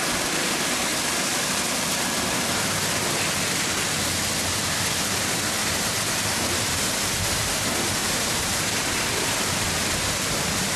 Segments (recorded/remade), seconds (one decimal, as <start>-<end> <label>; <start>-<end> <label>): 0.0-5.6 recorded; 5.6-6.5 remade; 6.5-8.0 recorded; 8.0-9.3 remade; 9.3-10.8 recorded